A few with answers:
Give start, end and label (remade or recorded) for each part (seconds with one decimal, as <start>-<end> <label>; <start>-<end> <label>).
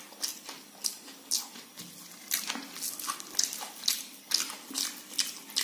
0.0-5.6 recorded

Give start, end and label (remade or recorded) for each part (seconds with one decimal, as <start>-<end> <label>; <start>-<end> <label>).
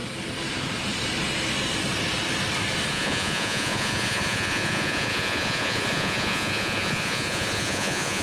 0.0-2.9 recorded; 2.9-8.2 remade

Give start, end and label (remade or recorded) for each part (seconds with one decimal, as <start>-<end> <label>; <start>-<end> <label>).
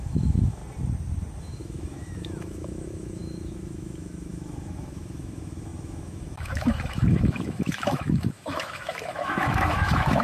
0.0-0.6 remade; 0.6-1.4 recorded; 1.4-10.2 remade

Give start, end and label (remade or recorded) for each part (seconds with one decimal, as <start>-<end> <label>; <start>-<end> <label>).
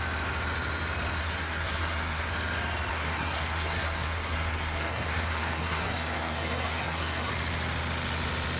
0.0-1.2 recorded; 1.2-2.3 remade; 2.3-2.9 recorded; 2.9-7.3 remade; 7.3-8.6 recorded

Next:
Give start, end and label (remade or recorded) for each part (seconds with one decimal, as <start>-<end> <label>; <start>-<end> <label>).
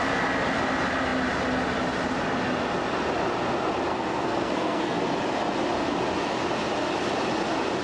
0.0-3.9 recorded; 3.9-5.0 remade; 5.0-7.8 recorded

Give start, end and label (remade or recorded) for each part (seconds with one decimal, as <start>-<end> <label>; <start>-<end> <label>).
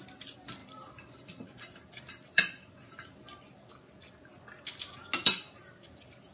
0.0-0.6 recorded; 0.6-3.7 remade; 3.7-5.2 recorded; 5.2-6.3 remade